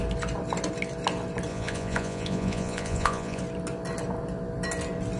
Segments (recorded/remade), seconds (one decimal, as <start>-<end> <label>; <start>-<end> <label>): 0.0-1.5 recorded; 1.5-3.4 remade; 3.4-5.2 recorded